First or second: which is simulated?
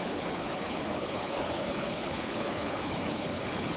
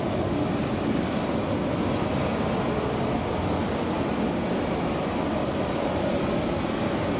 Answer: first